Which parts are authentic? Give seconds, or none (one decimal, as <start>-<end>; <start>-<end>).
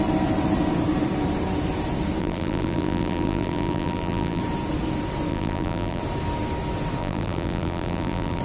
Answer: 0.0-2.2; 4.4-5.3; 6.0-7.0